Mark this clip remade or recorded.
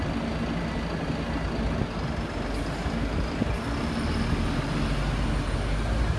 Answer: recorded